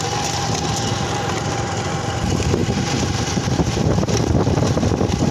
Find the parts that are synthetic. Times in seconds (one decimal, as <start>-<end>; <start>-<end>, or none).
none